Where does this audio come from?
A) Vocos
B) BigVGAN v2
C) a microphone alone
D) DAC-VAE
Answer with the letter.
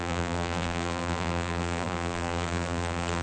B